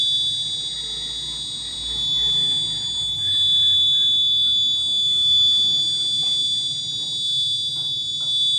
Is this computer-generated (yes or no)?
no